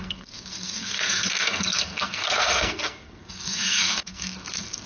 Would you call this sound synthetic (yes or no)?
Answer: yes